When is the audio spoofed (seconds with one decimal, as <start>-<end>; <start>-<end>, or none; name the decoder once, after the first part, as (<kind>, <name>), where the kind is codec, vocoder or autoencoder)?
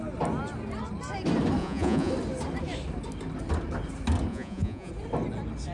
1.6-2.1 (vocoder, Vocos); 4.3-4.9